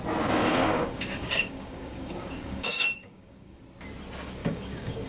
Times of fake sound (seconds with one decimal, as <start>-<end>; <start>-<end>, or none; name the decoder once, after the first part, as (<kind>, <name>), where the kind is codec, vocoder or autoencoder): 0.5-3.6 (codec, DAC); 4.4-5.1